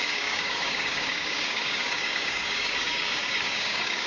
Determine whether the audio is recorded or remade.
remade